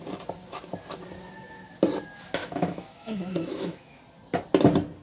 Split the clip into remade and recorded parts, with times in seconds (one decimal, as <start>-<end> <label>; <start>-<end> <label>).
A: 0.0-2.4 recorded; 2.4-4.0 remade; 4.0-5.0 recorded